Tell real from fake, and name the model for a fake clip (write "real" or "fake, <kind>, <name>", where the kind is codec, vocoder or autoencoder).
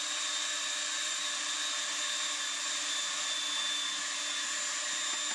real